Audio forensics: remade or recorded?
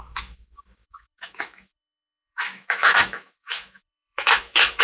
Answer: remade